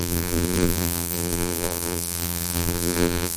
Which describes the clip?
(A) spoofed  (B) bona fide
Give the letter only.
A